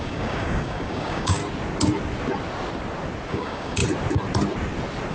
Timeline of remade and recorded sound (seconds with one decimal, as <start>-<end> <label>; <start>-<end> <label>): 0.0-1.4 remade; 1.4-3.3 recorded; 3.3-3.8 remade; 3.8-5.1 recorded